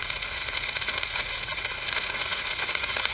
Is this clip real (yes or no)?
no